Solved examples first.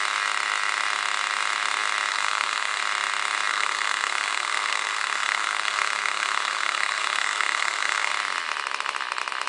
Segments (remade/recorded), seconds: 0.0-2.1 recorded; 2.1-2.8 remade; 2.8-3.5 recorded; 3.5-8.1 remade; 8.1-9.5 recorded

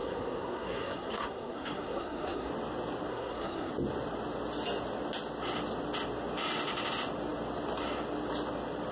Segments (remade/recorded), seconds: 0.0-2.5 remade; 2.5-3.1 recorded; 3.1-3.7 remade; 3.7-8.9 recorded

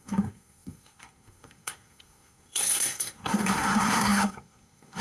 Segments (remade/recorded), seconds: 0.0-5.0 remade

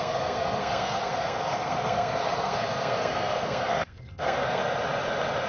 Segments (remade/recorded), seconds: 0.0-4.6 remade; 4.6-5.5 recorded

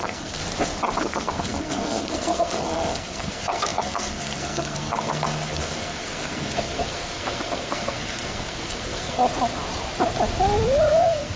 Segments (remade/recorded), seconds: 0.0-0.4 remade; 0.4-1.0 recorded; 1.0-9.2 remade; 9.2-10.9 recorded; 10.9-11.4 remade